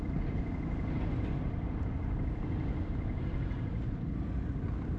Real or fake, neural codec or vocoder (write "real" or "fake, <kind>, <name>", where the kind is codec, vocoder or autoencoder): real